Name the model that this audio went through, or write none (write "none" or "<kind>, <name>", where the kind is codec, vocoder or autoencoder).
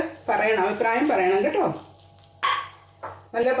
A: none